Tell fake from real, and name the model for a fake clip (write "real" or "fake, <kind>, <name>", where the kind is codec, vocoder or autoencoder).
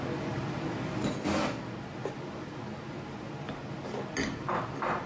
real